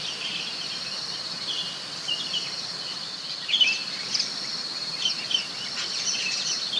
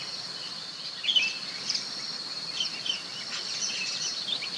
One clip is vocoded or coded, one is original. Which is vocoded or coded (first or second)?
first